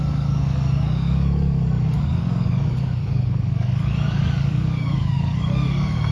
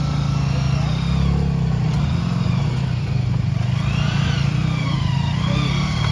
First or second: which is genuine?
second